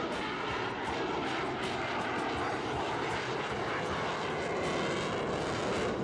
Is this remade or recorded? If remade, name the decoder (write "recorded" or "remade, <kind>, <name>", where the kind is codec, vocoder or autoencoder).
recorded